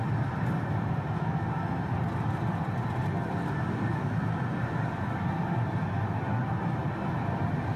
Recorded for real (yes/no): yes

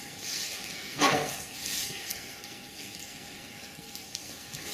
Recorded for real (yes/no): no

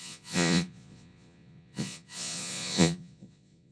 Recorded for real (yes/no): no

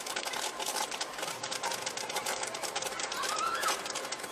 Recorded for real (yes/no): no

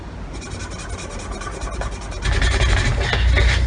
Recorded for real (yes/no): yes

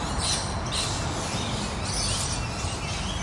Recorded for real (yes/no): yes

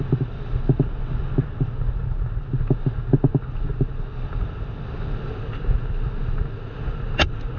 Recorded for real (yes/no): yes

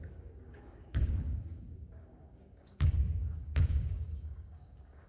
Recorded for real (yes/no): no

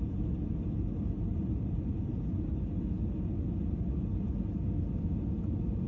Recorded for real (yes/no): yes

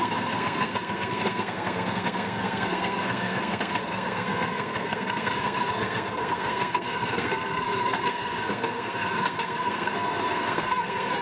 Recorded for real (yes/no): no